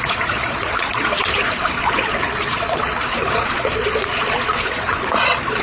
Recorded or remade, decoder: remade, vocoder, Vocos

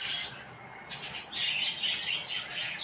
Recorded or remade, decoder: recorded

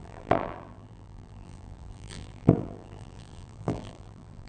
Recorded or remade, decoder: remade, vocoder, BigVGAN v2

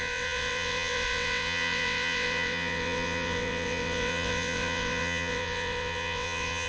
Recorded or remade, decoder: remade, vocoder, WaveNeXt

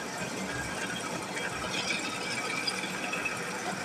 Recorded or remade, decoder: recorded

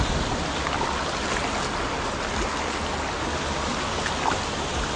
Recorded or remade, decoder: recorded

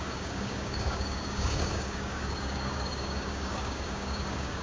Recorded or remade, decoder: remade, codec, DAC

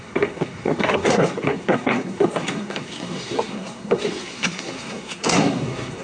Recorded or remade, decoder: remade, codec, SNAC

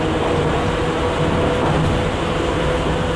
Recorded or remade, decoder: recorded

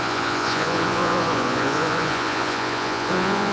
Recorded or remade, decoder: remade, vocoder, Vocos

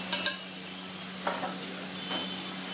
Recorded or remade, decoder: recorded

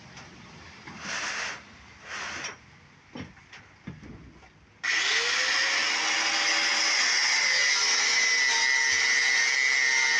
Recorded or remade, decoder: recorded